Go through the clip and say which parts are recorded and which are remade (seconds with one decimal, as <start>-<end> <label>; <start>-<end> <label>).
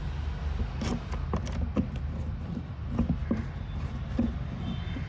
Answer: 0.0-5.1 recorded